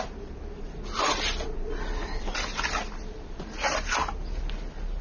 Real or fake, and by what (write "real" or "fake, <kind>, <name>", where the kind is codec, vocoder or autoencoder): real